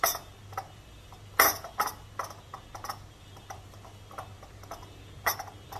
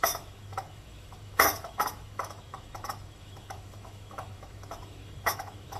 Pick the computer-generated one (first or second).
second